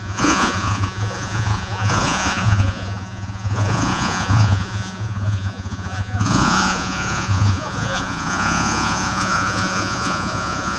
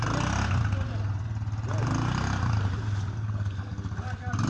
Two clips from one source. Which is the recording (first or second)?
second